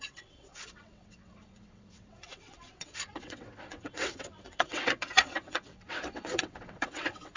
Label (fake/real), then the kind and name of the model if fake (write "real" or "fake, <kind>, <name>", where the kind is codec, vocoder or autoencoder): fake, vocoder, WaveNeXt